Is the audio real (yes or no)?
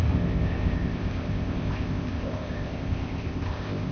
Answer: no